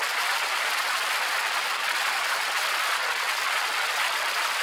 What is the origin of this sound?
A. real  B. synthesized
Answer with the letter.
A